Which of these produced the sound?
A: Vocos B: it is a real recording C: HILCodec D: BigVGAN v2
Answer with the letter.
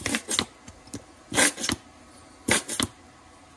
B